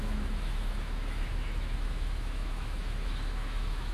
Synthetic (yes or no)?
yes